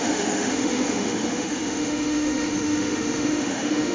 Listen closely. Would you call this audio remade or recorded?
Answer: remade